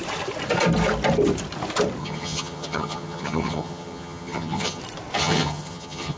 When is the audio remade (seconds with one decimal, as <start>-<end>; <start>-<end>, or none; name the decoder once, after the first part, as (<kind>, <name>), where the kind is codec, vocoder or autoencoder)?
2.0-4.8 (vocoder, HiFi-GAN); 5.2-6.2